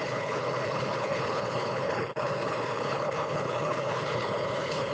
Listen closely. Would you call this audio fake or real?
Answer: fake